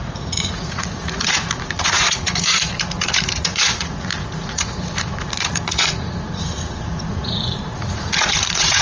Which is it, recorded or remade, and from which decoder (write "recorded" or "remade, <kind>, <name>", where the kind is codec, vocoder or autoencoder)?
remade, vocoder, Vocos